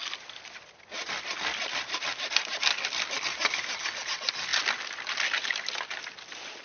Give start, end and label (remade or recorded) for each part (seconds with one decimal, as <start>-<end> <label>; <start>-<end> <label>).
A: 0.0-6.6 recorded